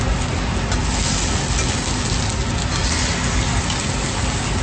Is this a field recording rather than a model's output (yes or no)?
yes